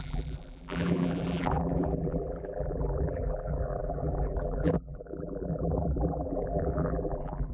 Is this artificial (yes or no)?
yes